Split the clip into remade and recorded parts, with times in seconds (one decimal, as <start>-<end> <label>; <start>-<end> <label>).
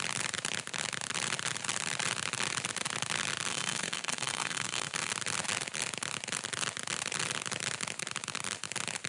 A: 0.0-3.5 recorded; 3.5-5.1 remade; 5.1-9.1 recorded